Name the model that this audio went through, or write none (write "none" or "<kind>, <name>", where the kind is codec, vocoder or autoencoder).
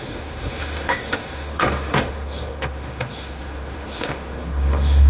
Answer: autoencoder, DAC-VAE